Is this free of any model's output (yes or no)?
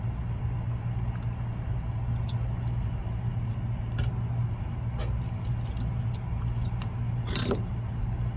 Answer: yes